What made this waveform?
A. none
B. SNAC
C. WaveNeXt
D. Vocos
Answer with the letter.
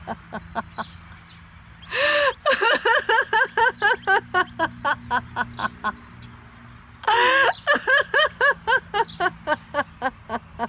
A